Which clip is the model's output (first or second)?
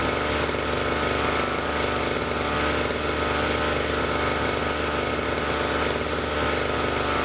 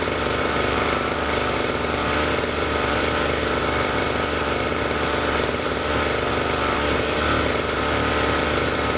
second